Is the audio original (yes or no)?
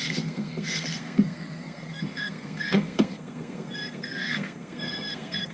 no